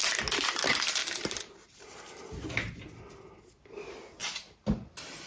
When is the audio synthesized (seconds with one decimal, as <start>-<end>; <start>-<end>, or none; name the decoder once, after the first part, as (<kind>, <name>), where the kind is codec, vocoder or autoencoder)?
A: 1.0-2.2 (vocoder, BigVGAN v2); 4.2-5.3